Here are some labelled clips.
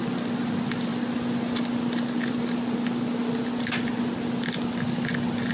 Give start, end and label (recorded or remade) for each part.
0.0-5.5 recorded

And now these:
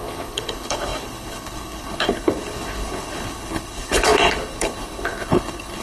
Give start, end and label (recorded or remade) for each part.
0.0-5.8 remade

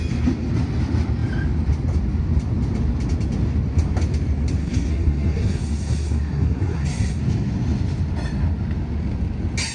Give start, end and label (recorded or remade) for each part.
0.0-4.6 recorded; 4.6-7.2 remade; 7.2-9.7 recorded

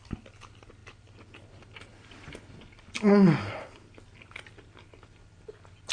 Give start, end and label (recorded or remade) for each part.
0.0-5.9 recorded

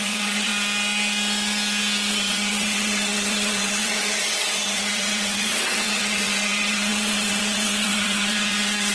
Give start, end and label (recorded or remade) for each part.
0.0-0.5 remade; 0.5-2.1 recorded; 2.1-8.9 remade

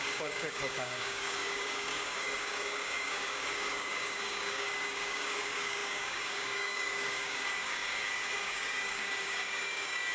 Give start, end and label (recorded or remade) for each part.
0.0-10.1 remade

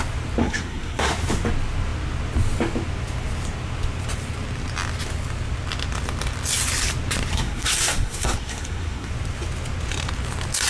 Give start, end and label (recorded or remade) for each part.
0.0-0.4 recorded; 0.4-1.1 remade; 1.1-7.3 recorded; 7.3-9.1 remade; 9.1-10.7 recorded

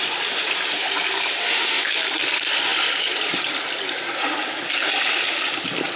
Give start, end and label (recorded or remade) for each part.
0.0-1.4 recorded; 1.4-1.9 remade; 1.9-6.0 recorded